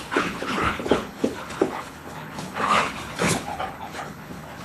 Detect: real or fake fake